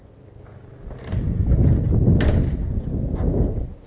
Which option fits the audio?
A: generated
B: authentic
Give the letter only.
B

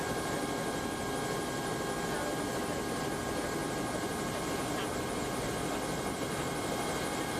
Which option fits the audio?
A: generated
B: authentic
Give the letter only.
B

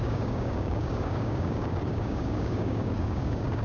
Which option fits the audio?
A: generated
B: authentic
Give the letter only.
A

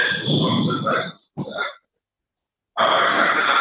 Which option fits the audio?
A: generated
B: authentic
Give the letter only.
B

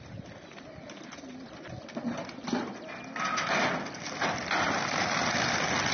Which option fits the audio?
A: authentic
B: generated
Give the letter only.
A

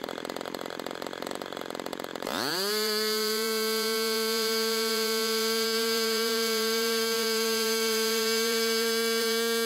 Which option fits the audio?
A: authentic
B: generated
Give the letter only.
B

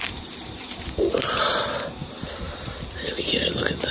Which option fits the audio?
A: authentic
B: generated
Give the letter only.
B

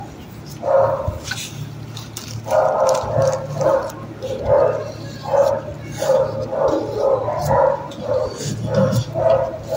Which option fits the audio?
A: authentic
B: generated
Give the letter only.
A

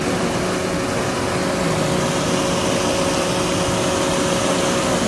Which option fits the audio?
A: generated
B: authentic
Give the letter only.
B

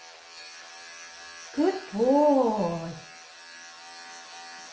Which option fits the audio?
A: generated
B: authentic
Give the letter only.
B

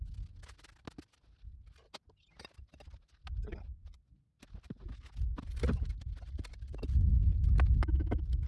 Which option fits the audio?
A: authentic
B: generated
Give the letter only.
A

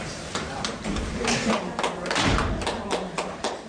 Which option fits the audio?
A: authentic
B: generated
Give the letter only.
B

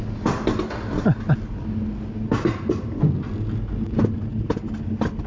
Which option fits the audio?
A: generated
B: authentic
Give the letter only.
B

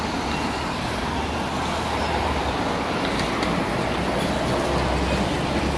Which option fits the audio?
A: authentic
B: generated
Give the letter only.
A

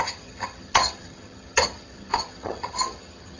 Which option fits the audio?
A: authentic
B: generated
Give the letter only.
B